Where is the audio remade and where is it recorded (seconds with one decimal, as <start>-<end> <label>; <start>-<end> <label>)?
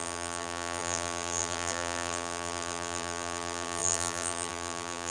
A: 0.0-5.1 remade